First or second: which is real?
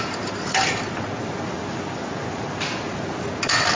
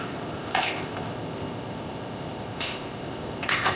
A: first